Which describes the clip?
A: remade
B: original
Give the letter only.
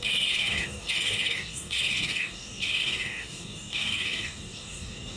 A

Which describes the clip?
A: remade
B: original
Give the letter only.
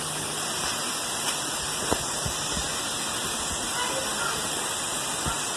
B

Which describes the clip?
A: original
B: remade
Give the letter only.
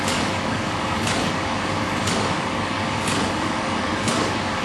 B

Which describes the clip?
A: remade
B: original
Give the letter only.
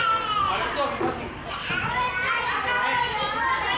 B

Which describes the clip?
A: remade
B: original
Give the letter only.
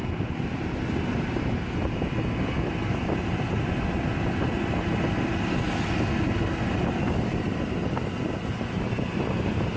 B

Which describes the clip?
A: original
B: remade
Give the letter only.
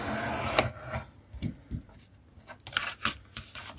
A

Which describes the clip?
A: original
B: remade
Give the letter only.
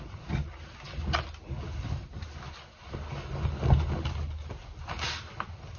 A